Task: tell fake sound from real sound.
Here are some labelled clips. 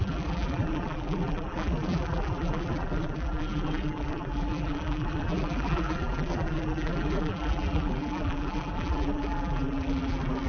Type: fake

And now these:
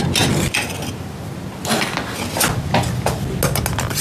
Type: real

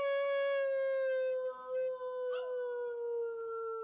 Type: real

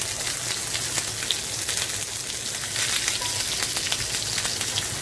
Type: real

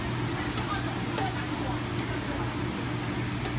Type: real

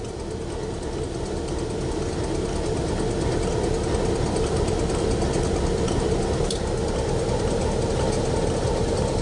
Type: real